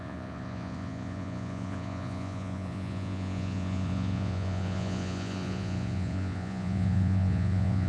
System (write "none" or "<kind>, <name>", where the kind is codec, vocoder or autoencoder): vocoder, Vocos